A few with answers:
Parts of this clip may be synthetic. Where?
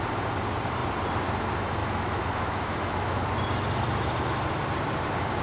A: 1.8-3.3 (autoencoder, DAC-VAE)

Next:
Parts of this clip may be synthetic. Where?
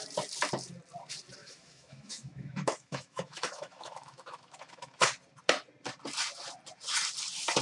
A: 1.4-5.1 (autoencoder, DAC-VAE)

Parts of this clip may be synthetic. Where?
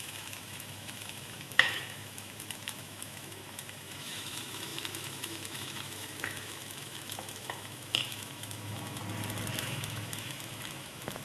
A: 0.0-9.0 (autoencoder, DAC-VAE); 9.6-11.2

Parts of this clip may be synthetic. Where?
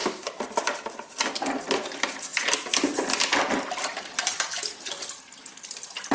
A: none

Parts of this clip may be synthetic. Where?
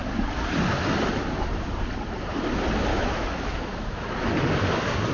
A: 2.9-4.1 (autoencoder, DAC-VAE)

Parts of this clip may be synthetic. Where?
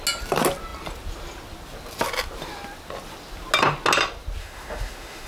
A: 4.4-5.3 (autoencoder, DAC-VAE)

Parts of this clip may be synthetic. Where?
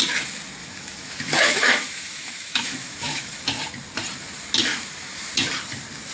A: 0.6-3.4 (autoencoder, DAC-VAE); 4.7-5.3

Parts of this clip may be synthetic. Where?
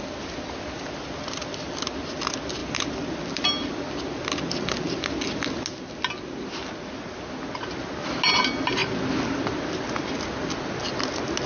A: none